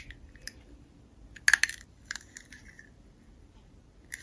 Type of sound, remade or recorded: recorded